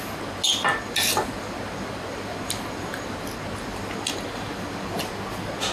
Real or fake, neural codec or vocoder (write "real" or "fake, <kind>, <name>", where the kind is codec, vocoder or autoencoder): real